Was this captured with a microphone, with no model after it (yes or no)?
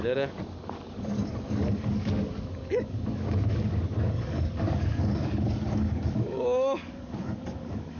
no